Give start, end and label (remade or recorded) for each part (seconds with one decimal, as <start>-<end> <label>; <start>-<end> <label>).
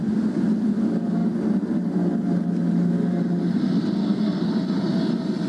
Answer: 0.0-4.0 recorded; 4.0-4.5 remade; 4.5-5.5 recorded